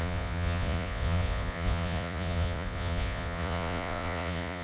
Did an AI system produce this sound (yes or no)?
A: yes